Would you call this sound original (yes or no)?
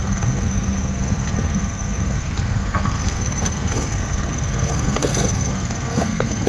no